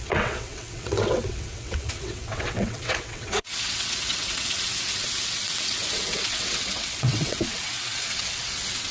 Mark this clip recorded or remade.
remade